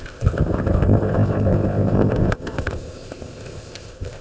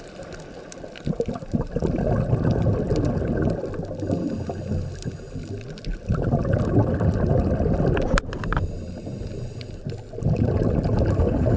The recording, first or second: second